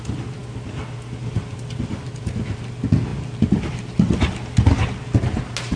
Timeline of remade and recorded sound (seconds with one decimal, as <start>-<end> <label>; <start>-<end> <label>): 0.0-5.8 recorded